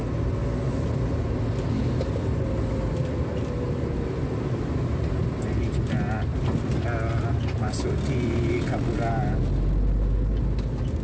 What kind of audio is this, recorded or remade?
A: recorded